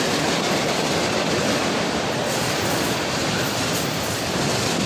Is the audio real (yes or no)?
no